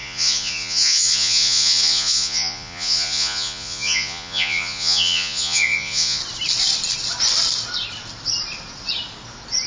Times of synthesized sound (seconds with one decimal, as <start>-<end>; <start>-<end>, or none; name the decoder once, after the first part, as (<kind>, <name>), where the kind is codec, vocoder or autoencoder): 0.0-6.2 (vocoder, Vocos)